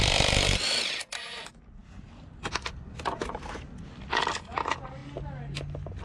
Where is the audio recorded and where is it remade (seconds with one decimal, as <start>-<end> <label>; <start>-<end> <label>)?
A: 0.0-6.0 recorded